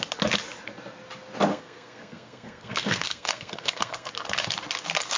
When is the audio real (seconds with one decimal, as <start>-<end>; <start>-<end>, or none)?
0.0-1.5; 4.1-5.2